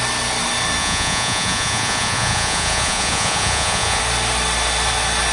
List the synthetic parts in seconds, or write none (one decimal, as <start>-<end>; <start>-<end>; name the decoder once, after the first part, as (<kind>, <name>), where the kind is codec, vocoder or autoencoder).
0.8-4.0 (vocoder, Vocos)